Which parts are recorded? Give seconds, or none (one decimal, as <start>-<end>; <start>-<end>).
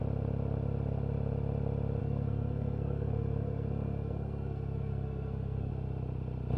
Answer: 0.0-2.0; 5.7-6.6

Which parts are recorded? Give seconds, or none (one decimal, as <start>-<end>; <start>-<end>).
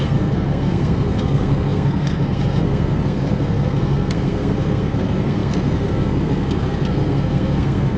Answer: none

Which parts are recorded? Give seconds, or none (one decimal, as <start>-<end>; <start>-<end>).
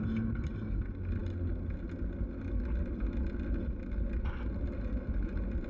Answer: 0.0-5.7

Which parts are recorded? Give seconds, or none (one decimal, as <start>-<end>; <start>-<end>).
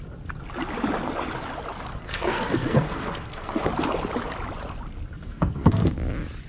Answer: 0.0-1.9; 3.7-5.2; 5.9-6.5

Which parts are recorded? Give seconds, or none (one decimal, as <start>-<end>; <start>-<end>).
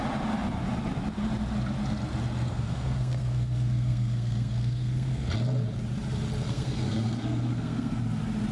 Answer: 0.0-2.5; 5.3-6.5; 8.0-8.5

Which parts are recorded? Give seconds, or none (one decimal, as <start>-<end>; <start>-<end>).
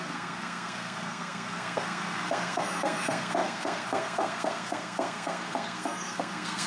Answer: none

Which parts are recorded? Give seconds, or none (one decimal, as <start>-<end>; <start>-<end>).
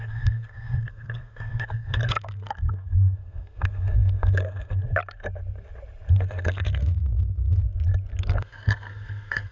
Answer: 4.8-6.1; 7.6-8.2